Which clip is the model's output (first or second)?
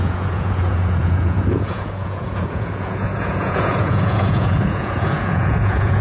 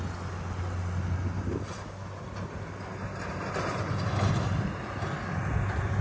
first